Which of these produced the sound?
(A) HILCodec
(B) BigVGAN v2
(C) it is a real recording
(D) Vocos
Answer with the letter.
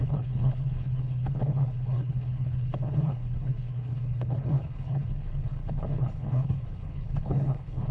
A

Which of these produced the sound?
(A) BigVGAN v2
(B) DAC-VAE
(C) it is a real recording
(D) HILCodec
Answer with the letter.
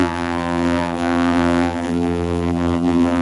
A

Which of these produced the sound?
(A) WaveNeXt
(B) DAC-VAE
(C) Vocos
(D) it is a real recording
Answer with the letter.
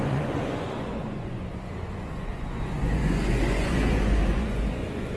C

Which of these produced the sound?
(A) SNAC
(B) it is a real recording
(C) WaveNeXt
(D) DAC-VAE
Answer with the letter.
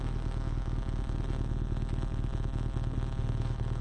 D